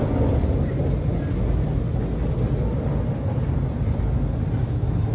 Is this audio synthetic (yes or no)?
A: no